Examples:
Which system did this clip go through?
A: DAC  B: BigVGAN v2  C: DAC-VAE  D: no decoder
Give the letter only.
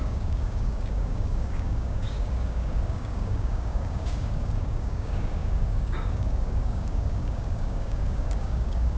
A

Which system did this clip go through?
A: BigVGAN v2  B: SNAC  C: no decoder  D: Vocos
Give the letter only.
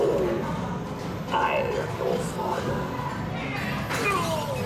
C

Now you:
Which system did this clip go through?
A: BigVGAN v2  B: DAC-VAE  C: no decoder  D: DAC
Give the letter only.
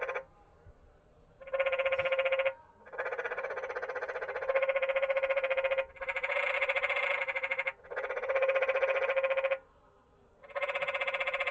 C